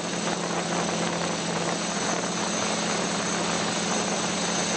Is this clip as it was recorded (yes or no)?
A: yes